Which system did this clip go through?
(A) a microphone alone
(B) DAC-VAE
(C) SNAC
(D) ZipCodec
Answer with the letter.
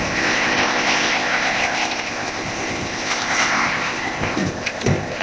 D